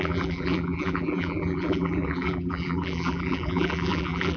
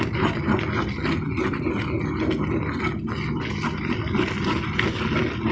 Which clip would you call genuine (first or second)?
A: second